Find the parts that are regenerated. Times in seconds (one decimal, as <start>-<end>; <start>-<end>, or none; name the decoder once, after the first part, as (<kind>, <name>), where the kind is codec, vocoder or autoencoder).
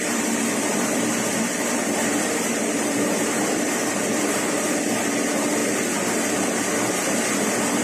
0.0-5.6 (vocoder, BigVGAN v2); 6.9-7.8